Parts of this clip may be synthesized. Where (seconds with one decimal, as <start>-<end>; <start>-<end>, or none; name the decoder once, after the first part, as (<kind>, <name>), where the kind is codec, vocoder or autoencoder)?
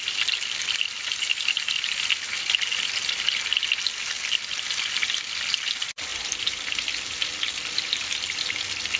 6.1-8.6 (vocoder, BigVGAN v2)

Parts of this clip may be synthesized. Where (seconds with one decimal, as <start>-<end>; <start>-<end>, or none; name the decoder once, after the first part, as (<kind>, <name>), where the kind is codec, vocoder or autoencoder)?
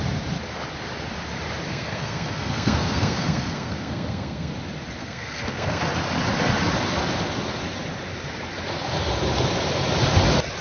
1.7-4.5 (codec, SNAC); 5.0-5.8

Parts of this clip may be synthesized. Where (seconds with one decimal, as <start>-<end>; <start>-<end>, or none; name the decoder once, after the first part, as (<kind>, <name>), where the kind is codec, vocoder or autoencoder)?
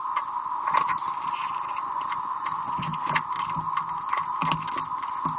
1.0-3.2 (vocoder, Vocos)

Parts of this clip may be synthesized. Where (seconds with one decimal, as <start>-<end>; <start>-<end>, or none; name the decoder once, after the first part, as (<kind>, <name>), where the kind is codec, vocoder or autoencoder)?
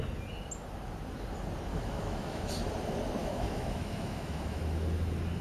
1.7-2.5 (autoencoder, DAC-VAE); 3.2-4.6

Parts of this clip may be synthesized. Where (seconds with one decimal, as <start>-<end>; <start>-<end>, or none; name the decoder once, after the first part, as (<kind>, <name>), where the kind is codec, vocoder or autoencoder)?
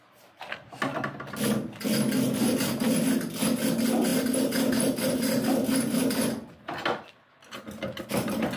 none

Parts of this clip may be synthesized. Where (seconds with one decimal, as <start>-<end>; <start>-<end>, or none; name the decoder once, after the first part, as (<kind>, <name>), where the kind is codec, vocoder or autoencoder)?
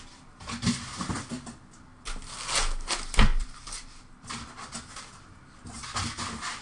3.3-4.4 (vocoder, BigVGAN v2)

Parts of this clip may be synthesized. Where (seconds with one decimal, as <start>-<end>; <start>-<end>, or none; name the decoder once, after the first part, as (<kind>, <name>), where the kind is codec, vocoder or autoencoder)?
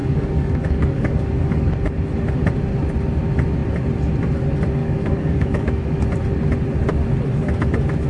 0.0-1.7 (codec, DAC); 4.8-6.0